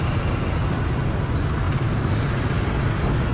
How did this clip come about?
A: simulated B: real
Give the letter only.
B